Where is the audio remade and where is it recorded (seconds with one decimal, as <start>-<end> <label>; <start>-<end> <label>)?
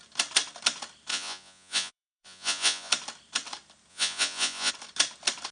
0.0-1.1 recorded; 1.1-2.9 remade; 2.9-3.9 recorded; 3.9-4.7 remade; 4.7-5.5 recorded